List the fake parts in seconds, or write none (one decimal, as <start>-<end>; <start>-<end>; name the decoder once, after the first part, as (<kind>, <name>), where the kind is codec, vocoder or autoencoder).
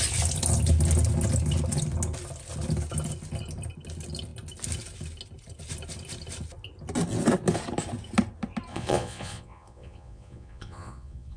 8.7-11.4 (vocoder, Vocos)